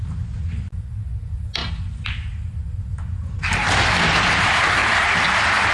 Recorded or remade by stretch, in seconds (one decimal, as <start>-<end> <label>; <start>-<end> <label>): 0.0-5.7 recorded